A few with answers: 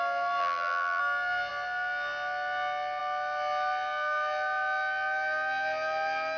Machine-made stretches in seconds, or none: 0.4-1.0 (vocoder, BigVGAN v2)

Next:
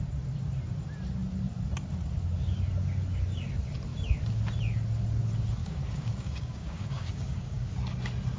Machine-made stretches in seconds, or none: 5.6-7.7 (codec, DAC)

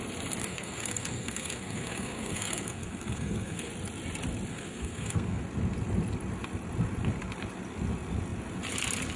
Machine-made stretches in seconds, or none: 0.4-3.7 (codec, SNAC); 4.5-5.4

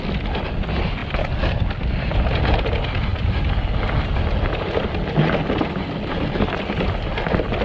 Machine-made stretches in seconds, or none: none

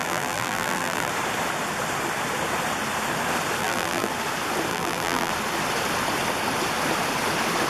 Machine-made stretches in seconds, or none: 0.0-1.1 (vocoder, BigVGAN v2); 3.6-4.1; 4.7-5.3

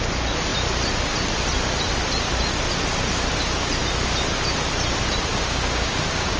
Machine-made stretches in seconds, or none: 5.3-6.4 (codec, DAC)

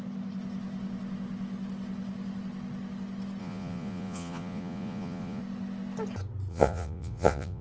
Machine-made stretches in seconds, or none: 3.4-5.4 (vocoder, Vocos); 6.5-7.6